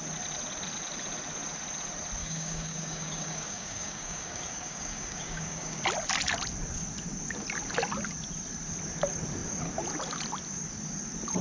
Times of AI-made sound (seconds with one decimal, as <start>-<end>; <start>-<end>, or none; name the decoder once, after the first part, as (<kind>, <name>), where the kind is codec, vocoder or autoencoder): 2.2-5.8 (codec, DAC)